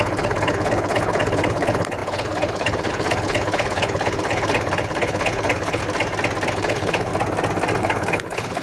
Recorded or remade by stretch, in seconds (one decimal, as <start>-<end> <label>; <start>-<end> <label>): 0.0-5.8 remade; 5.8-6.5 recorded; 6.5-7.1 remade; 7.1-7.8 recorded; 7.8-8.6 remade